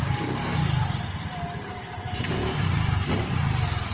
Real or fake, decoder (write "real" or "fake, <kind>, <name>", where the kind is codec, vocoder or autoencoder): real